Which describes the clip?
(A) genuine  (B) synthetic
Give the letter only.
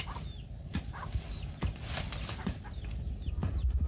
A